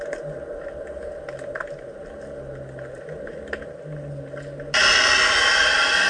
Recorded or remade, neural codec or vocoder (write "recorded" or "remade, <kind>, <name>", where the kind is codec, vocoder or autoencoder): recorded